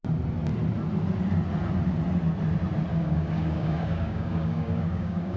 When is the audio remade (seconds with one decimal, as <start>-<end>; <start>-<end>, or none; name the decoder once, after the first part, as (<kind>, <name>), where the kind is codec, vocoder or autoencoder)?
2.9-5.4 (codec, DAC)